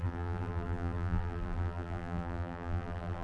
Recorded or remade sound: remade